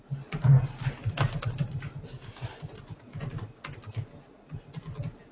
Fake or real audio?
real